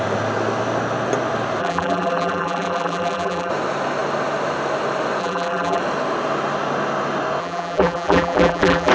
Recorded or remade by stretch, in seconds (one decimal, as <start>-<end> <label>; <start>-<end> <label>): 0.0-1.6 recorded; 1.6-3.5 remade; 3.5-5.2 recorded; 5.2-5.8 remade; 5.8-7.4 recorded; 7.4-8.9 remade